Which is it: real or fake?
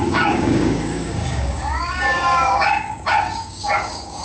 fake